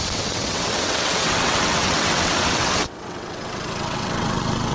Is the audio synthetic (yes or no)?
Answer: yes